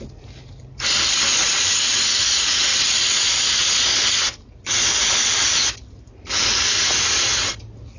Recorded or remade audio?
recorded